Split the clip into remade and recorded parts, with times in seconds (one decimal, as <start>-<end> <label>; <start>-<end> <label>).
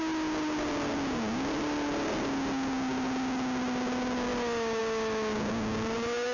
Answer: 0.0-6.3 recorded